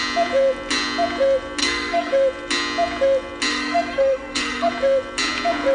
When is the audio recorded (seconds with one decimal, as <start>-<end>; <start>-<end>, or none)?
0.0-1.6; 2.1-3.5; 4.7-5.7